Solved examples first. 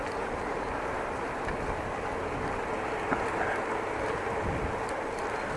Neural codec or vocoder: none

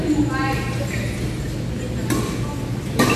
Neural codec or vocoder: none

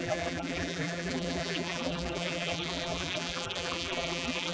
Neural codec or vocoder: vocoder, BigVGAN v2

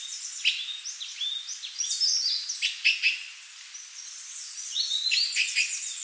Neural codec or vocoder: none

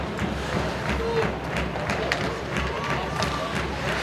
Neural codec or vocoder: none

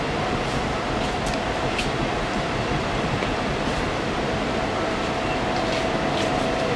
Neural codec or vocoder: vocoder, BigVGAN v2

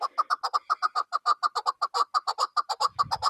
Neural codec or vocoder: none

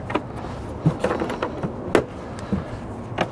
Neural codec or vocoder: none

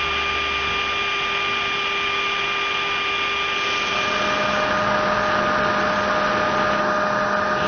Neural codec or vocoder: none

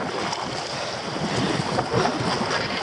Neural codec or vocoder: none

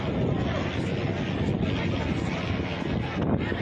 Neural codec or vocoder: none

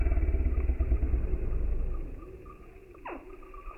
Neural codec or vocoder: none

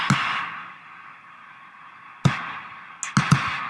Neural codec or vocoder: none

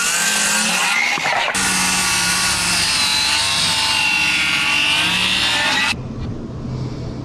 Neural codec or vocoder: none